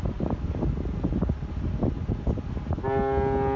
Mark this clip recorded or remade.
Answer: recorded